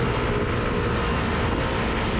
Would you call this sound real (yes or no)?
yes